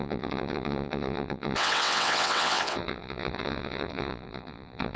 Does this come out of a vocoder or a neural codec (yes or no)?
yes